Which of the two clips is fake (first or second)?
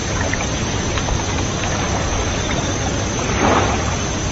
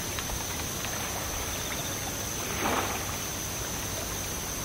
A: first